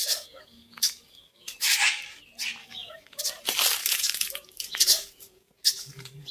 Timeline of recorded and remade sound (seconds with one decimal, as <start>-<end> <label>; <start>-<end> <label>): 0.0-2.2 remade; 2.2-2.6 recorded; 2.6-3.2 remade; 3.2-3.8 recorded; 3.8-6.3 remade